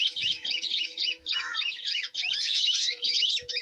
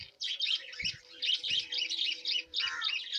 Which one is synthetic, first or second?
first